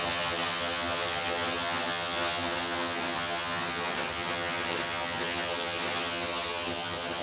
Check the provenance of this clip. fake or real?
fake